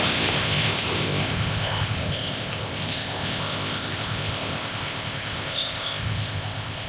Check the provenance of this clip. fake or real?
fake